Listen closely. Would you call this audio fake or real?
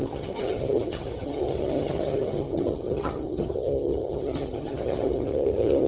fake